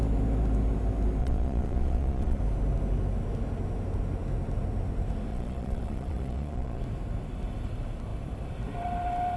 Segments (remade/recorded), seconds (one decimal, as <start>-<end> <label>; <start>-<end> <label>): 0.0-1.2 recorded; 1.2-2.4 remade; 2.4-5.3 recorded; 5.3-6.8 remade; 6.8-9.4 recorded